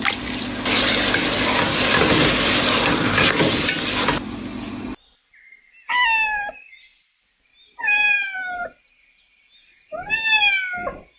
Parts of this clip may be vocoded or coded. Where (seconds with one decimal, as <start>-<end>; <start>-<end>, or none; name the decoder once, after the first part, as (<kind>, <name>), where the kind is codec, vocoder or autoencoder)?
6.9-10.1 (vocoder, BigVGAN v2)